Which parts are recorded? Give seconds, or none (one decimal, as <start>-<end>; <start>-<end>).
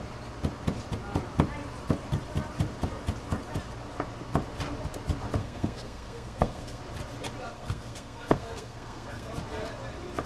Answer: 0.0-5.4; 6.8-7.5; 9.3-10.3